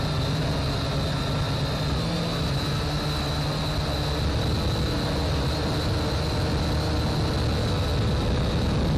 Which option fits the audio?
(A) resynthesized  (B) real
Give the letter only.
B